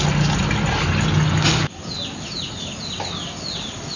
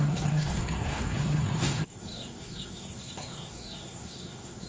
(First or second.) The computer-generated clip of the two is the second